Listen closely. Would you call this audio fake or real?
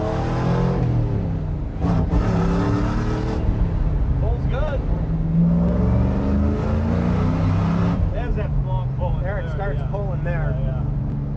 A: real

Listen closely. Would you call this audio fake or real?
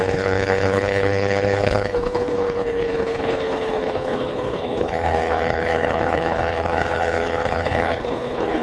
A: fake